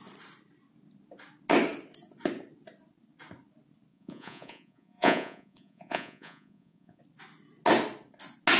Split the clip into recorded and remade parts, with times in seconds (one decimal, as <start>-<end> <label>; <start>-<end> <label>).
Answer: 0.0-3.9 recorded; 3.9-7.0 remade; 7.0-8.6 recorded